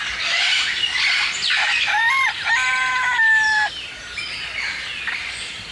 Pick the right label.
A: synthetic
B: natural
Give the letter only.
B